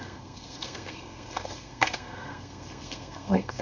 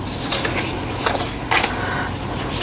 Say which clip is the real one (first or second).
second